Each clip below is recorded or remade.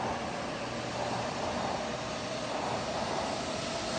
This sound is recorded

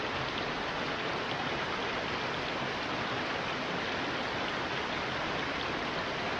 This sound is recorded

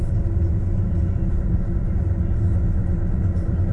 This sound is recorded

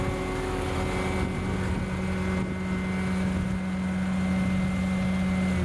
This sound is recorded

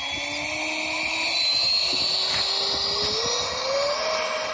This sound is recorded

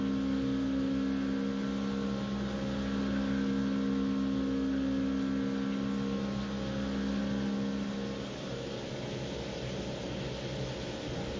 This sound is recorded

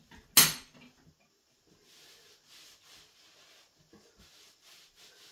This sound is recorded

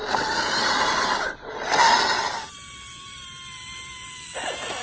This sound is recorded